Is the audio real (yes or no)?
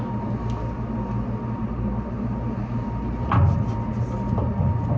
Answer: yes